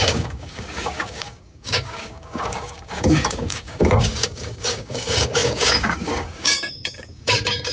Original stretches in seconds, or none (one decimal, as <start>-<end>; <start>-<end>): none

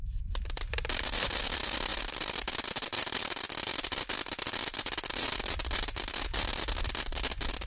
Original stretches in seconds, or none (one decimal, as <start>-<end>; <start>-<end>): 0.0-7.7